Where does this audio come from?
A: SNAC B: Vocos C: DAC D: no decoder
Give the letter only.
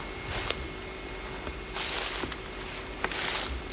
D